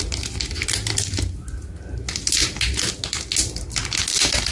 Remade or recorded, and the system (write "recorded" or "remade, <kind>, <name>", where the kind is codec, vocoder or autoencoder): recorded